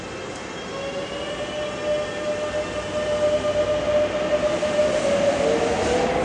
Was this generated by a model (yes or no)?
no